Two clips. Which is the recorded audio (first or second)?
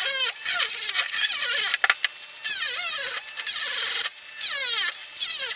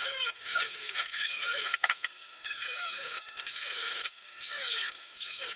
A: first